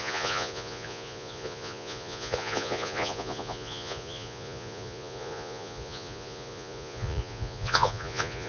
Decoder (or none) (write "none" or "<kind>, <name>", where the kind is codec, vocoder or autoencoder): vocoder, Vocos